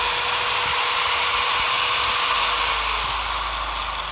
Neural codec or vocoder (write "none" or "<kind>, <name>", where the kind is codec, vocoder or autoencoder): none